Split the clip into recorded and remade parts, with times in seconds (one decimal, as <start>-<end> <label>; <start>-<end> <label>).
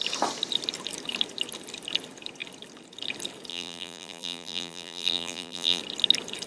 0.0-3.5 recorded; 3.5-5.8 remade; 5.8-6.5 recorded